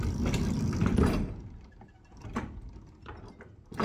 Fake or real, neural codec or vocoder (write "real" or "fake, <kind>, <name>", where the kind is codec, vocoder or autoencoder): real